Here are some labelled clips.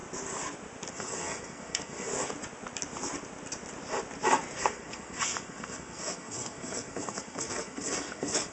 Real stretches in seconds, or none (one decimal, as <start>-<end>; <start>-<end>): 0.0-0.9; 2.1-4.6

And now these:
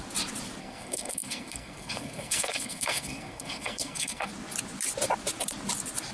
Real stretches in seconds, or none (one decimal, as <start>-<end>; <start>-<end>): 0.0-0.6; 4.3-6.1

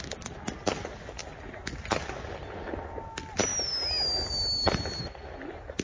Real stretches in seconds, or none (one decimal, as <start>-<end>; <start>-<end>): 0.0-5.8

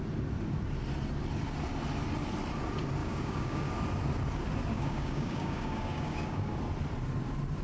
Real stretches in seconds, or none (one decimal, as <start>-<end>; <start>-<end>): 0.0-3.0; 3.7-4.7; 6.5-7.6

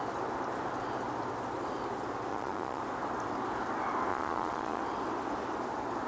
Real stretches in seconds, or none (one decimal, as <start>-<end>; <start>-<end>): 0.0-2.3; 2.8-4.1; 4.8-6.1

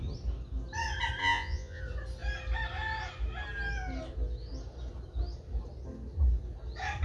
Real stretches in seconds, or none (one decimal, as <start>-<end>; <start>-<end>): 0.0-1.2; 1.8-7.0